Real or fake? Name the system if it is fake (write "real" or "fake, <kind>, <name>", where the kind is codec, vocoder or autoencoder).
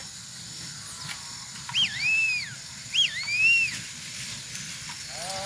real